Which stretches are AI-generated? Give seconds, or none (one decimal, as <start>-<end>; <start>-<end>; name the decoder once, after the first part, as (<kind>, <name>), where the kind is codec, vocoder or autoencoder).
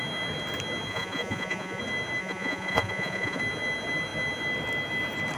0.9-1.8 (vocoder, Vocos); 2.2-3.4